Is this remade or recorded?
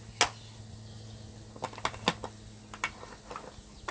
recorded